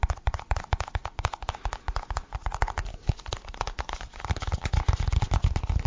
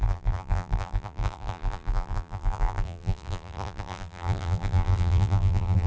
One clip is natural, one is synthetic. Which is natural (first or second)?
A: first